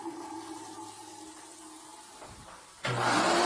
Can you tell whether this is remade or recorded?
recorded